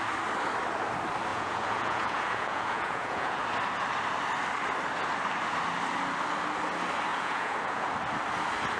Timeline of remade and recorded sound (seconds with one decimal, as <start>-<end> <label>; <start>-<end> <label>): 0.0-1.3 recorded; 1.3-3.4 remade; 3.4-7.1 recorded; 7.1-7.9 remade; 7.9-8.8 recorded